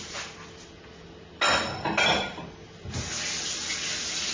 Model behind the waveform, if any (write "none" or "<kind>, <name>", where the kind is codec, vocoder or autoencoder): none